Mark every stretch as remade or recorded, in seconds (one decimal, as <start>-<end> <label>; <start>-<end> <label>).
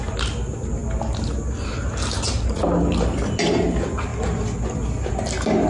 0.0-5.7 recorded